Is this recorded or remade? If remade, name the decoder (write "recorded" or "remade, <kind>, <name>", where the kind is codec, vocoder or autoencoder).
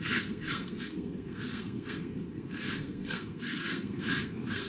remade, codec, SNAC